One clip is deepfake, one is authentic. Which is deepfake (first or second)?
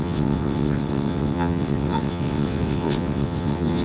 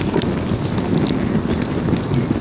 first